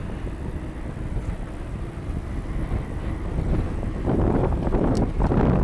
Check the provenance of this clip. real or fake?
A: real